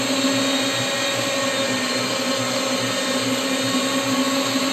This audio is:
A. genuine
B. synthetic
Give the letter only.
A